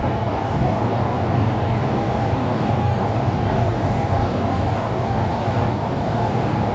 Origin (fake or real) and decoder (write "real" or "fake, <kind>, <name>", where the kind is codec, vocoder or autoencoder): fake, codec, DAC